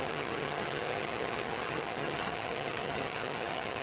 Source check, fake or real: fake